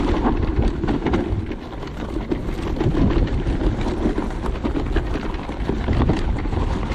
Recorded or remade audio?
recorded